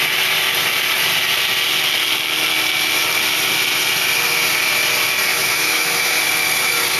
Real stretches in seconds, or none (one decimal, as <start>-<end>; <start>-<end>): 0.0-5.3; 6.2-7.0